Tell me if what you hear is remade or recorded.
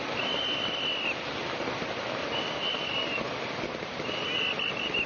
recorded